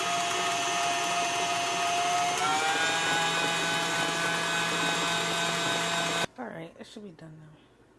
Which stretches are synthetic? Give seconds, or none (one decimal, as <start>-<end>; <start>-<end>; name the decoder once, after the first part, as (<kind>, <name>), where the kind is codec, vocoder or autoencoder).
none